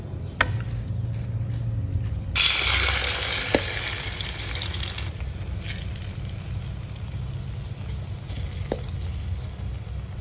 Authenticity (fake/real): real